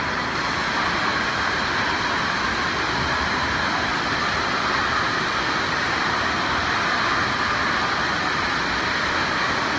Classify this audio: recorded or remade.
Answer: recorded